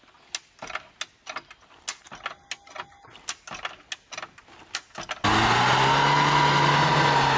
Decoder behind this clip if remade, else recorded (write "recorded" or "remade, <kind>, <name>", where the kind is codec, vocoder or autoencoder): recorded